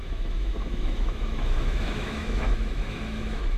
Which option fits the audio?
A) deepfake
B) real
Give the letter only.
A